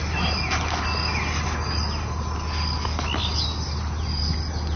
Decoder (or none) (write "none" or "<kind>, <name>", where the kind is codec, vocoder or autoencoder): none